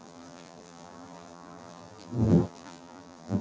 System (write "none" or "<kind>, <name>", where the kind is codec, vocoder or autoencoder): vocoder, BigVGAN v2